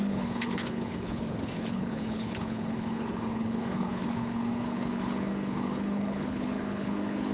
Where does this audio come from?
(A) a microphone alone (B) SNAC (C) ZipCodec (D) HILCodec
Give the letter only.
D